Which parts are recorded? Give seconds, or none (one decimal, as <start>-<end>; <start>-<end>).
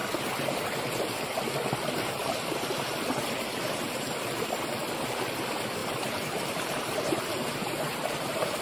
0.0-3.5; 4.3-5.8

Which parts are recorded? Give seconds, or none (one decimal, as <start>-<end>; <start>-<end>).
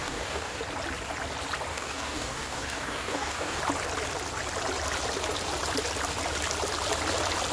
0.6-1.7; 3.6-7.5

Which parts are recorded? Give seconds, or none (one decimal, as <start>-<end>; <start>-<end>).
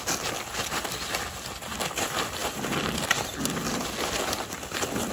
0.0-5.1